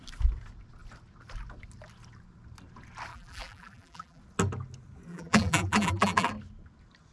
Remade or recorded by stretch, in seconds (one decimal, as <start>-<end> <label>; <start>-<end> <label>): 0.0-3.1 recorded; 3.1-4.2 remade; 4.2-5.1 recorded; 5.1-6.3 remade; 6.3-7.1 recorded